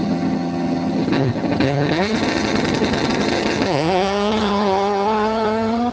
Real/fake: fake